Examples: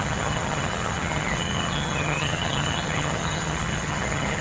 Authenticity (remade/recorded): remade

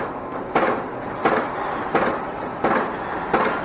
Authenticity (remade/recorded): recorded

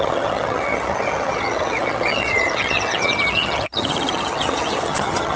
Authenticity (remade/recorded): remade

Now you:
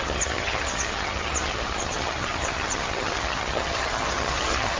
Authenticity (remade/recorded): remade